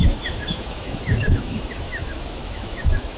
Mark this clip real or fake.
fake